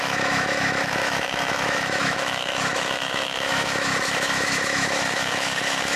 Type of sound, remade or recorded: remade